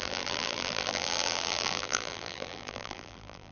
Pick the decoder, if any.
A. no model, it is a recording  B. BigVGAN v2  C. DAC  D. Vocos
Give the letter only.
B